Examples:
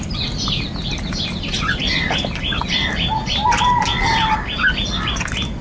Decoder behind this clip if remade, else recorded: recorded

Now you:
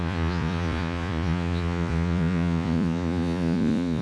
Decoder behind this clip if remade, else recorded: remade, vocoder, Vocos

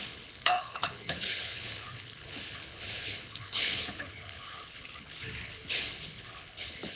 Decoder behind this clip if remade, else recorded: remade, codec, HILCodec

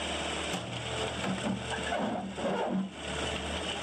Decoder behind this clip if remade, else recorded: recorded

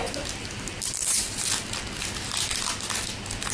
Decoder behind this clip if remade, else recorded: recorded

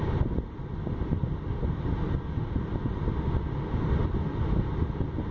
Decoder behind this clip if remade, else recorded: recorded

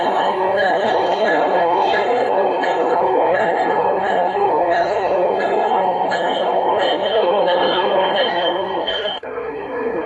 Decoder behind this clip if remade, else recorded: remade, codec, SNAC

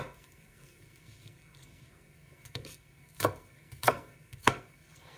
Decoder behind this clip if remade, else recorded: remade, codec, SNAC